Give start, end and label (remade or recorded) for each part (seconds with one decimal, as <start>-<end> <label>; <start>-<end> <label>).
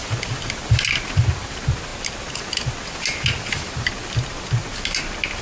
0.0-5.4 recorded